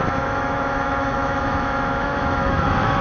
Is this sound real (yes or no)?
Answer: no